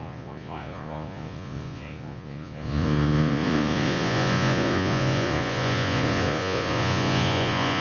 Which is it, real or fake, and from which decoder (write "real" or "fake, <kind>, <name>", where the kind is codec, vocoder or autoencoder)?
fake, vocoder, Vocos